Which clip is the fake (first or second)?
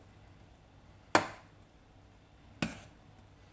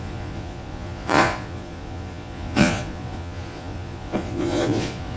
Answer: second